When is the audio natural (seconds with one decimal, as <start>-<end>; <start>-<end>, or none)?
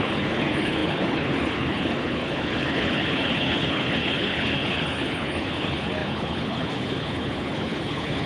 none